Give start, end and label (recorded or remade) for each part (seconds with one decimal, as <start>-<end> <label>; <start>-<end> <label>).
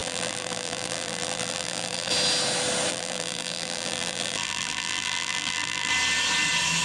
0.0-2.1 remade; 2.1-2.9 recorded; 2.9-5.9 remade; 5.9-6.8 recorded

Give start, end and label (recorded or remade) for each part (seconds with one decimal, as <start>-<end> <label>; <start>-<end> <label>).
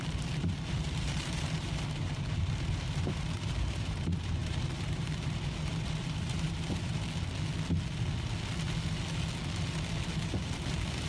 0.0-6.9 remade; 6.9-10.4 recorded; 10.4-11.1 remade